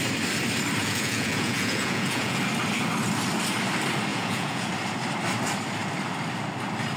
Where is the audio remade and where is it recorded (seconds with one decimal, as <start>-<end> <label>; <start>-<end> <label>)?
0.0-0.8 recorded; 0.8-2.4 remade; 2.4-4.1 recorded; 4.1-4.7 remade; 4.7-7.0 recorded